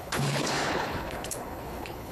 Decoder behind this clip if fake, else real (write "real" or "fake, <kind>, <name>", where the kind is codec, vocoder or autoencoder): fake, codec, HILCodec